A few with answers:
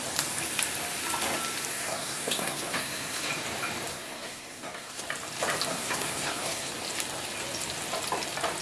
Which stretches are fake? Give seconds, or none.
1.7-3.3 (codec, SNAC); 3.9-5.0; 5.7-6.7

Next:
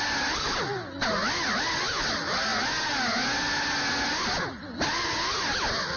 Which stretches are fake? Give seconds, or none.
none

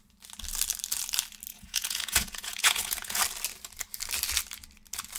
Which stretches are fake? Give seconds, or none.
1.5-3.2 (vocoder, Vocos)

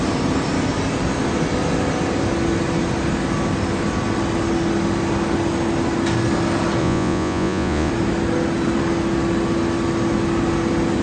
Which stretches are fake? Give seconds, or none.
6.8-7.9 (vocoder, Vocos)

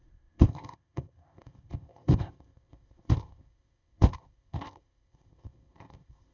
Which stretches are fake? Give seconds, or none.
0.0-6.3 (codec, ZipCodec)

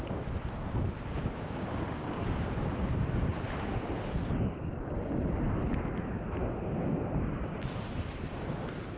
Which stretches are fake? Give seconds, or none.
1.2-3.1 (codec, DAC)

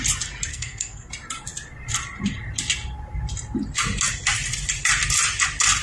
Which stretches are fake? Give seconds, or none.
0.5-1.1 (codec, SNAC)